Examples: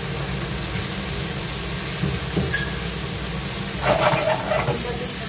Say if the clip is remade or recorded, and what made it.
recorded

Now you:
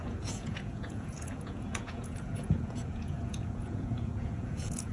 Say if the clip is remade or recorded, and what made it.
remade, vocoder, Vocos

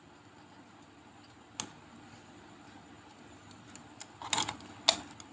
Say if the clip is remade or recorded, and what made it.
recorded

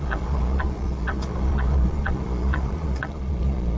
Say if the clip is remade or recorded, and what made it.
remade, vocoder, Vocos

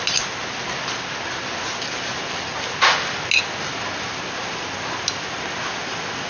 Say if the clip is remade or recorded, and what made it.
recorded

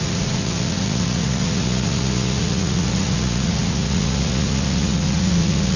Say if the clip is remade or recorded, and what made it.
remade, vocoder, Vocos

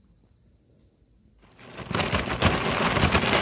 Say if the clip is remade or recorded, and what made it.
recorded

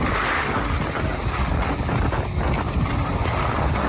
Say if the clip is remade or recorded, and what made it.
recorded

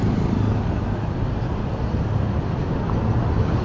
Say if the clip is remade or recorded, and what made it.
recorded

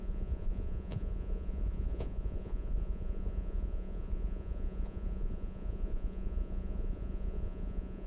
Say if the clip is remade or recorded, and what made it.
remade, vocoder, Vocos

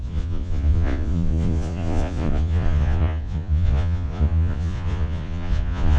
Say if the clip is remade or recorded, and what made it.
remade, vocoder, Vocos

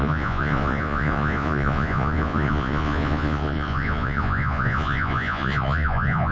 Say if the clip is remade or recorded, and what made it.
remade, vocoder, Vocos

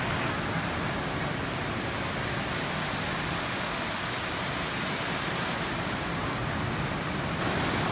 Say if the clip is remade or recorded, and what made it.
recorded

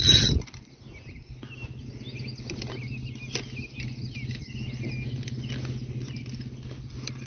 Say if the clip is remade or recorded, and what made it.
recorded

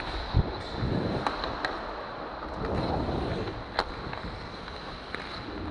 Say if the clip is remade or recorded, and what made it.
recorded